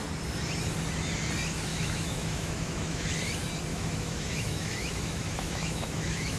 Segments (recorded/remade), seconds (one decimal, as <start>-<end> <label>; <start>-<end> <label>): 0.0-1.7 recorded; 1.7-3.1 remade; 3.1-3.7 recorded; 3.7-6.4 remade